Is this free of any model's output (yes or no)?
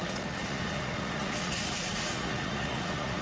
no